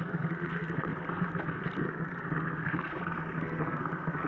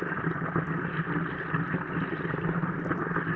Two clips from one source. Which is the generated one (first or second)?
first